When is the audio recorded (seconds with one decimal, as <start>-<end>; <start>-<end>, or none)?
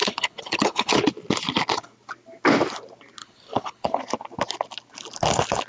0.9-3.2; 4.0-5.7